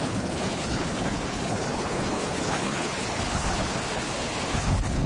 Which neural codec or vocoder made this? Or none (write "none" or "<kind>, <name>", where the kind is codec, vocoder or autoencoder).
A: codec, HILCodec